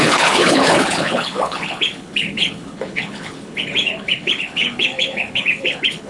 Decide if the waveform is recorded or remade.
remade